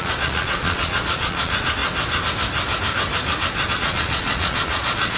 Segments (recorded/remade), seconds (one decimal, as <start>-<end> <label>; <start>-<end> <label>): 0.0-1.8 remade; 1.8-3.7 recorded; 3.7-5.2 remade

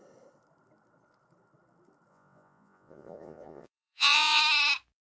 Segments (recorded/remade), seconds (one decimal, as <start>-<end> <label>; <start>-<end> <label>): 0.0-2.1 recorded; 2.1-4.4 remade; 4.4-5.0 recorded

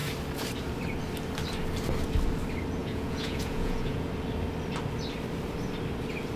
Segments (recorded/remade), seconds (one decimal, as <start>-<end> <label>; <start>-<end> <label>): 0.0-2.8 recorded; 2.8-4.1 remade; 4.1-6.4 recorded

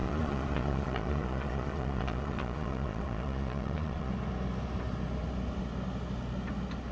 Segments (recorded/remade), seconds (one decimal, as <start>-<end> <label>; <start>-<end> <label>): 0.0-4.1 remade; 4.1-6.9 recorded

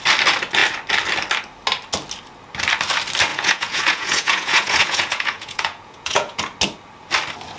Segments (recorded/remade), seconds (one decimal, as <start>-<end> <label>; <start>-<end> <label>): 0.0-3.3 recorded; 3.3-6.4 remade; 6.4-7.6 recorded

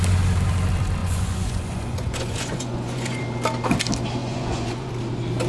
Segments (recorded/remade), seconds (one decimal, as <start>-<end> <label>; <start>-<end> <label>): 0.0-1.0 recorded; 1.0-3.2 remade; 3.2-4.2 recorded; 4.2-4.9 remade; 4.9-5.5 recorded